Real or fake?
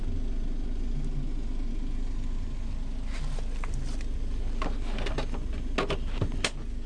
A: real